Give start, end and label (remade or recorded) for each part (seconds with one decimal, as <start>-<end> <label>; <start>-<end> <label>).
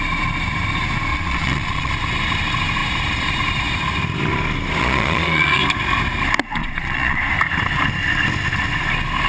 0.0-1.1 recorded; 1.1-1.9 remade; 1.9-4.8 recorded; 4.8-5.6 remade; 5.6-6.6 recorded; 6.6-7.2 remade; 7.2-9.3 recorded